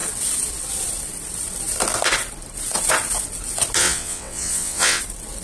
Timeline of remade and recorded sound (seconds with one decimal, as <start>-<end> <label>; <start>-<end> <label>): 0.0-3.8 recorded; 3.8-5.0 remade; 5.0-5.4 recorded